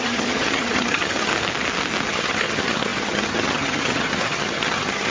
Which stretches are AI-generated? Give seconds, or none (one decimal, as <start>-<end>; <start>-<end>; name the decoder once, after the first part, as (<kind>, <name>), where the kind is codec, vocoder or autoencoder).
0.0-1.3 (vocoder, HiFi-GAN); 2.1-5.1